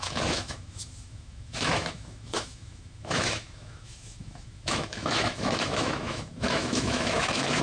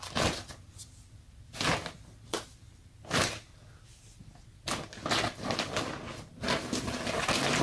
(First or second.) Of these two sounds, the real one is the second